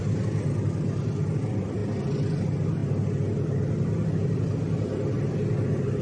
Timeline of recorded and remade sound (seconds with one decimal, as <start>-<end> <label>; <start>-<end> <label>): 0.0-6.0 recorded